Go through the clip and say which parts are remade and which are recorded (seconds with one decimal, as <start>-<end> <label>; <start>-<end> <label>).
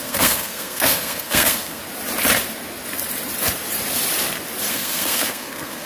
0.0-1.8 remade; 1.8-4.7 recorded; 4.7-5.9 remade